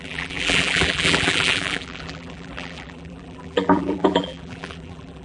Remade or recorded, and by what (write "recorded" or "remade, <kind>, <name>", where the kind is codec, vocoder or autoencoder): remade, vocoder, BigVGAN v2